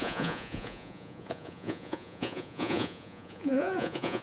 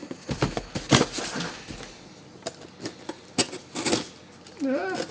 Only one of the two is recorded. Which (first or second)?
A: second